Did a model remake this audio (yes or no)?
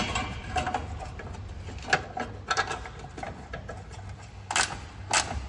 no